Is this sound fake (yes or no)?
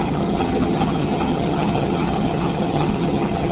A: yes